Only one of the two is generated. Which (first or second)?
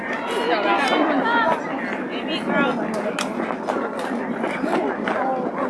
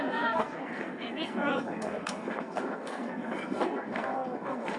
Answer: second